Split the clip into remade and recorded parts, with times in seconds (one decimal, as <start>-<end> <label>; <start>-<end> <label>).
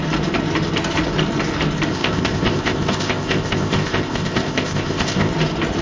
0.0-1.9 recorded; 1.9-5.3 remade; 5.3-5.8 recorded